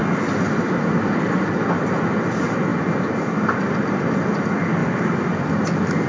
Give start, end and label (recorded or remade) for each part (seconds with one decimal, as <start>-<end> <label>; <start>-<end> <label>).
0.0-4.8 recorded; 4.8-5.5 remade; 5.5-6.1 recorded